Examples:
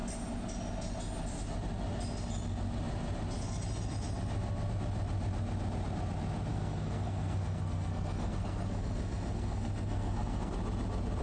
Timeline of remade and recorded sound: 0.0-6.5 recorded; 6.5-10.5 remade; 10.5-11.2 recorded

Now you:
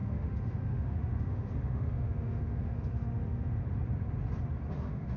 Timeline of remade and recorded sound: 0.0-3.6 remade; 3.6-4.7 recorded; 4.7-5.2 remade

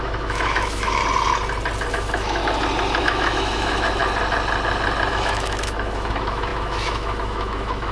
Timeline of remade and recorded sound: 0.0-1.0 remade; 1.0-1.9 recorded; 1.9-2.4 remade; 2.4-3.0 recorded; 3.0-4.0 remade; 4.0-5.1 recorded; 5.1-7.9 remade

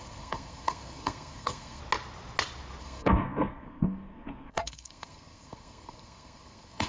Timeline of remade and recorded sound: 0.0-1.8 remade; 1.8-2.8 recorded; 2.8-6.9 remade

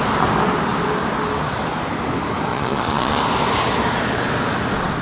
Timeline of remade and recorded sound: 0.0-2.5 recorded; 2.5-3.2 remade; 3.2-5.0 recorded

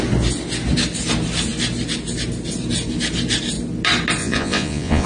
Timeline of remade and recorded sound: 0.0-4.2 recorded; 4.2-5.1 remade

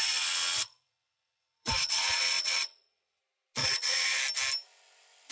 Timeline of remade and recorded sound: 0.0-3.2 remade; 3.2-3.6 recorded; 3.6-4.2 remade; 4.2-5.3 recorded

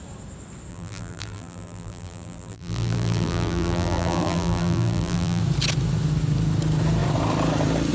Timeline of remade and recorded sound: 0.0-0.7 recorded; 0.7-5.4 remade; 5.4-7.9 recorded